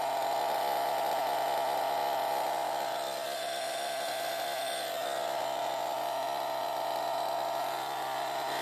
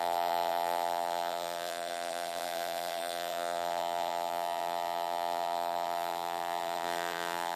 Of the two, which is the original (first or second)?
first